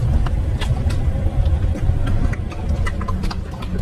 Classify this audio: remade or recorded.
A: recorded